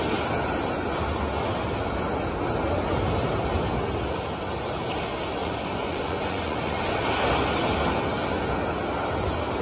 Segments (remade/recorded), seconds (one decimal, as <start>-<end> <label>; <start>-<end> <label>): 0.0-5.4 recorded; 5.4-6.8 remade; 6.8-9.6 recorded